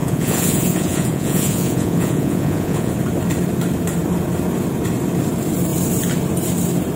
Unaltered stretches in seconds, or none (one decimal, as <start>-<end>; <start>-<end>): 2.9-7.0